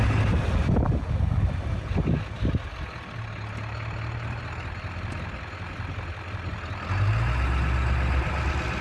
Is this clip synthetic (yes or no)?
no